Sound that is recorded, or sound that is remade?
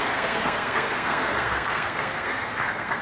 remade